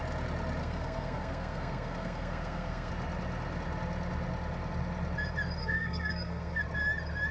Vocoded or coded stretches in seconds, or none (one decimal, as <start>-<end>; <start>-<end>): 0.6-2.9; 5.6-6.6